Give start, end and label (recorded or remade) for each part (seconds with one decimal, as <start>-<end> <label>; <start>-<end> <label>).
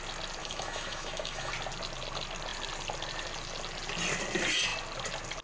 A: 0.0-0.4 recorded; 0.4-1.5 remade; 1.5-5.4 recorded